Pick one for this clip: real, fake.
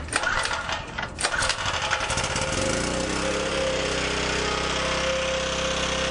real